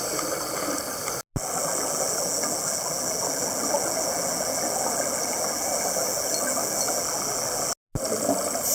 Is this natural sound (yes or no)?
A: yes